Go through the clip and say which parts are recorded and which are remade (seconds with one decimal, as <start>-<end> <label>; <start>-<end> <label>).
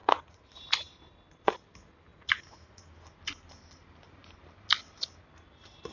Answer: 0.0-0.6 remade; 0.6-2.1 recorded; 2.1-2.9 remade; 2.9-5.9 recorded